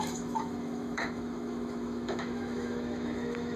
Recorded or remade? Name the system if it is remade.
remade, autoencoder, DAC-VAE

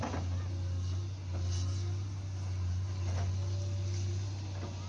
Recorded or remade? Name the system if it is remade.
recorded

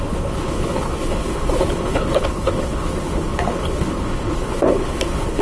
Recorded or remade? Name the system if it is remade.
remade, codec, HILCodec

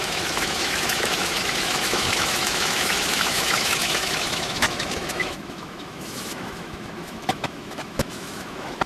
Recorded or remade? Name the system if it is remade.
remade, autoencoder, DAC-VAE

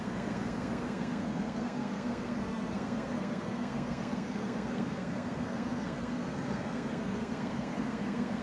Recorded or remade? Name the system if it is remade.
remade, codec, SNAC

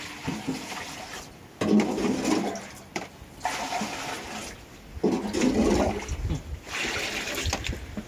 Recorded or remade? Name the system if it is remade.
recorded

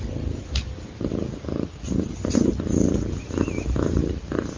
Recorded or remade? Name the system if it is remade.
recorded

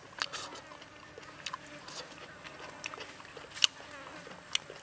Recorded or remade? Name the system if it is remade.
recorded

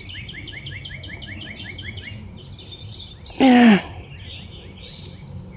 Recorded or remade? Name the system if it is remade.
recorded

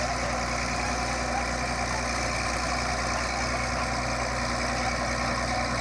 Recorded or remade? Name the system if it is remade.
recorded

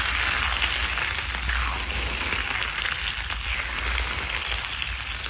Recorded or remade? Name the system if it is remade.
recorded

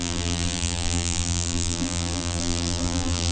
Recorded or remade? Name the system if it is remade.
remade, vocoder, BigVGAN v2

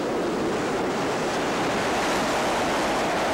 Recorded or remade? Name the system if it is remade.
recorded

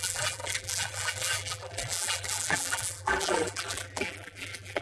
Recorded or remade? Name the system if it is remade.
remade, vocoder, BigVGAN v2